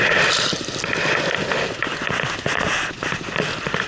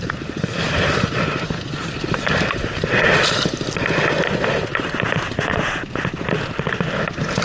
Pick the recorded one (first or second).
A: first